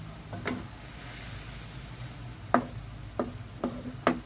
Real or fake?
real